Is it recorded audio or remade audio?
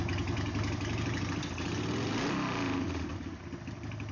recorded